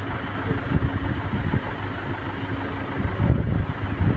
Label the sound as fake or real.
real